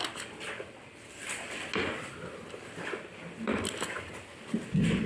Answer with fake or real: real